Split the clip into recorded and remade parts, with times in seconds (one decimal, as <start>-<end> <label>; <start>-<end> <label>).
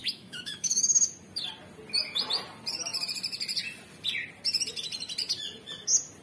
0.0-1.1 remade; 1.1-6.2 recorded